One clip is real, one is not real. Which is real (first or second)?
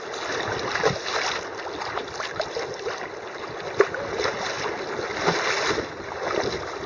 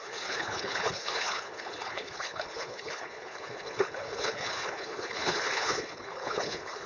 first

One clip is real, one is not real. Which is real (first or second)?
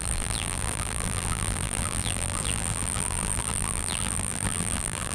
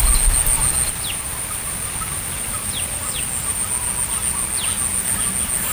second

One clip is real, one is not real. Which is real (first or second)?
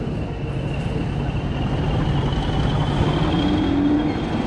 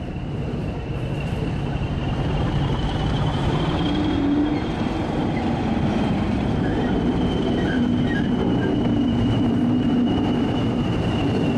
first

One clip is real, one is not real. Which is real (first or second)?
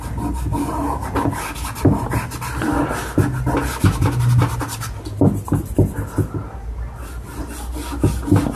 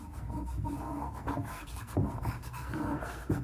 first